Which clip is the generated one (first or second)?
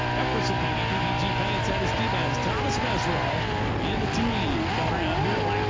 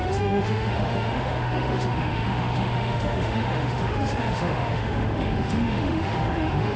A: second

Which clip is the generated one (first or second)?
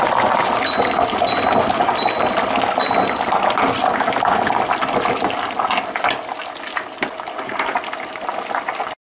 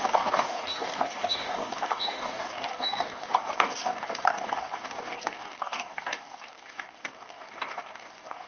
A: second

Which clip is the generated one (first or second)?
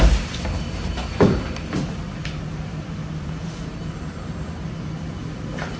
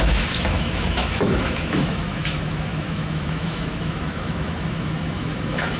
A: second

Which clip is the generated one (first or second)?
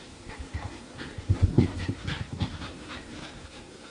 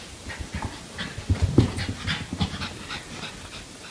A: first